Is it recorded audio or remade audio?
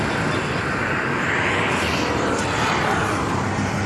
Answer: recorded